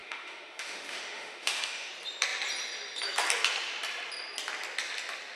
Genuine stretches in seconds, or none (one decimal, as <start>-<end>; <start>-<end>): 1.9-5.4